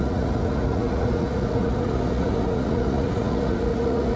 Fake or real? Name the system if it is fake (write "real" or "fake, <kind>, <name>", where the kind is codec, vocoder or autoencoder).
fake, vocoder, Vocos